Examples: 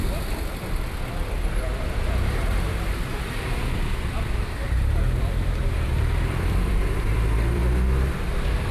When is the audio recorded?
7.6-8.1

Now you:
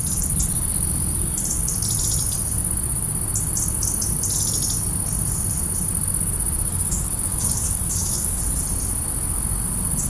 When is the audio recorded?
0.0-6.7; 8.4-10.1

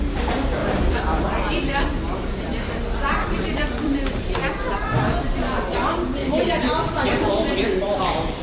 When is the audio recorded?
0.0-0.6; 4.8-6.2; 7.3-8.4

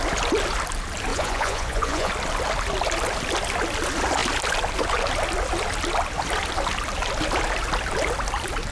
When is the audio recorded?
0.0-1.1; 2.1-8.7

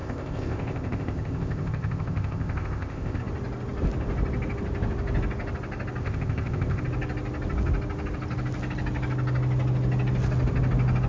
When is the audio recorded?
3.2-6.0; 6.8-11.1